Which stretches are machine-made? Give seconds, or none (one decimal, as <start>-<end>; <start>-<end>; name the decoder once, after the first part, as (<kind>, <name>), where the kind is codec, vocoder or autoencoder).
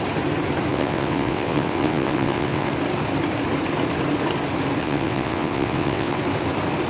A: 0.7-2.7 (vocoder, WaveNeXt); 4.8-6.2